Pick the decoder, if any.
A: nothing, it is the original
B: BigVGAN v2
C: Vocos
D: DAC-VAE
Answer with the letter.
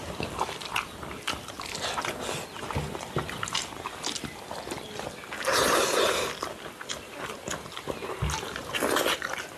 A